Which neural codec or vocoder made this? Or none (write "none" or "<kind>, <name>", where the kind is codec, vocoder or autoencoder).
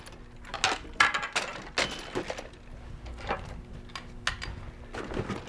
none